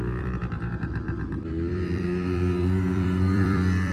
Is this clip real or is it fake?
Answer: fake